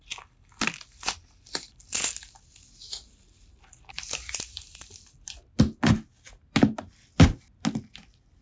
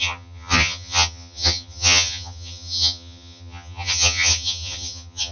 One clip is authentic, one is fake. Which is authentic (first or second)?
first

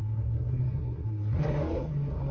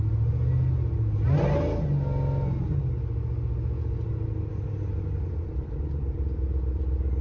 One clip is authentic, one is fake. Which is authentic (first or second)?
second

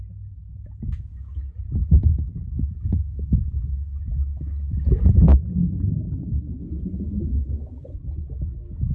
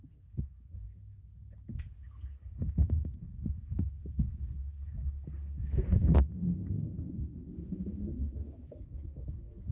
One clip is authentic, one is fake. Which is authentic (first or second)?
first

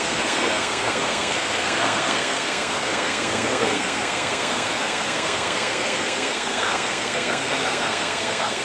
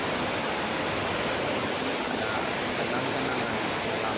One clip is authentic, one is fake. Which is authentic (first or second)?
second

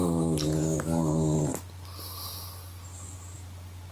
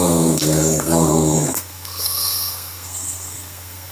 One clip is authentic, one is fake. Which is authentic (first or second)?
first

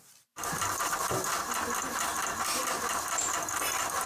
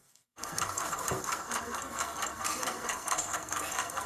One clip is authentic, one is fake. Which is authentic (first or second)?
first